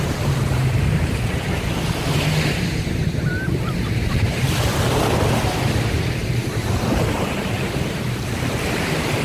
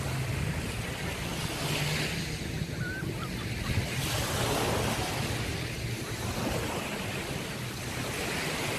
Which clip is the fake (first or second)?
first